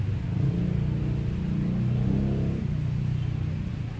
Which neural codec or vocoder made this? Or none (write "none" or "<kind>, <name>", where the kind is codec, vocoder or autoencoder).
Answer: none